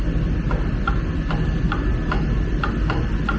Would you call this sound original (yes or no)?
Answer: yes